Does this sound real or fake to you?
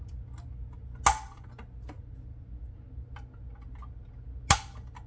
real